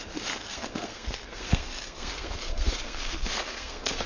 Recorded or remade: remade